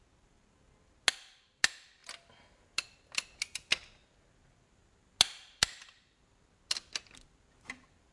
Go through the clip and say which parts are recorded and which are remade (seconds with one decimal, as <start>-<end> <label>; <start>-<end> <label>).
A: 0.0-8.1 recorded